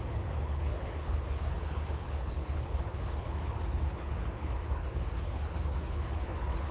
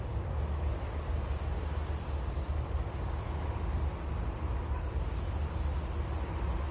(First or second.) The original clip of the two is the second